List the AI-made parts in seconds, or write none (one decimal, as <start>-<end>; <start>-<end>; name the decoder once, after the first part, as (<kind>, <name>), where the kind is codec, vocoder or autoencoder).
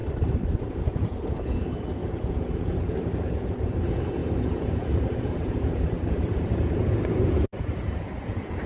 0.7-8.7 (vocoder, Vocos)